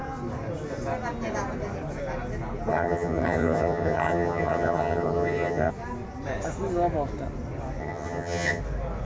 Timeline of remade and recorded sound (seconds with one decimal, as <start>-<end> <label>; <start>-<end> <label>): 0.0-2.7 recorded; 2.7-5.7 remade; 5.7-7.8 recorded; 7.8-8.6 remade; 8.6-9.0 recorded